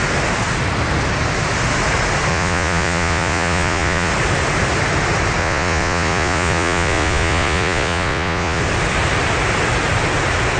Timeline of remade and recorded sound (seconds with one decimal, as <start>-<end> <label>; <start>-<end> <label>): 0.0-2.3 recorded; 2.3-4.1 remade; 4.1-5.4 recorded; 5.4-8.6 remade; 8.6-10.6 recorded